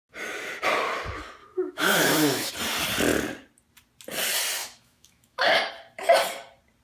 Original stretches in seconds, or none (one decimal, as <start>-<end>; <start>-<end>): 0.0-1.4; 2.5-4.6; 5.7-6.8